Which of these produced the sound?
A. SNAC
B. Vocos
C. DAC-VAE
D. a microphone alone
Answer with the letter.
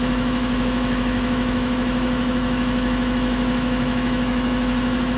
C